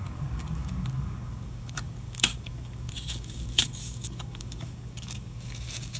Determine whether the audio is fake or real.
fake